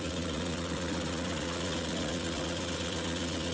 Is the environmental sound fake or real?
fake